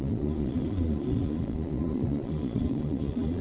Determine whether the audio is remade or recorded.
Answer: remade